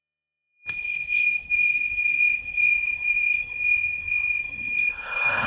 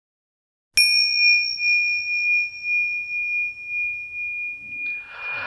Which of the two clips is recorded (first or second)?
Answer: second